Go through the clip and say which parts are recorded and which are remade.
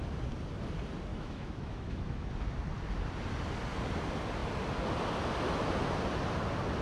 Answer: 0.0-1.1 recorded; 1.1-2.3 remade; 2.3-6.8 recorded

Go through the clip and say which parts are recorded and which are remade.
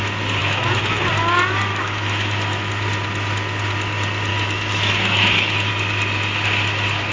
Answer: 0.0-0.4 recorded; 0.4-1.1 remade; 1.1-1.7 recorded; 1.7-2.7 remade; 2.7-4.3 recorded; 4.3-5.7 remade; 5.7-7.1 recorded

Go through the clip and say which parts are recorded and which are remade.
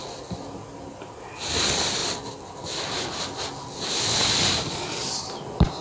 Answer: 0.0-5.8 recorded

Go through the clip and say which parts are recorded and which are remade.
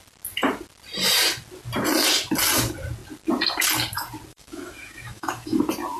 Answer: 0.0-4.3 recorded; 4.3-5.6 remade; 5.6-6.0 recorded